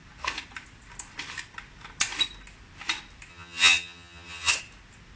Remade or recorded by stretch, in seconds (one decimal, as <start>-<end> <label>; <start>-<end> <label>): 0.0-3.3 recorded; 3.3-4.5 remade; 4.5-5.2 recorded